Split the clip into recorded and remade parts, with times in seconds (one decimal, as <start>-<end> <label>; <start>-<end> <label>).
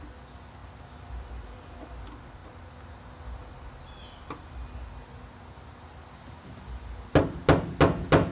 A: 0.0-8.3 recorded